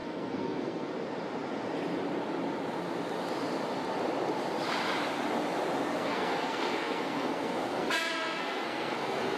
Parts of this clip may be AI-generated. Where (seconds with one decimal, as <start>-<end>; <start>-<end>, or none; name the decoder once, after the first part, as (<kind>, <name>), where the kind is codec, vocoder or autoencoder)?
0.0-0.9 (codec, SNAC); 5.9-9.4